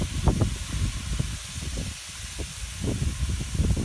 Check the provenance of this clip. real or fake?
real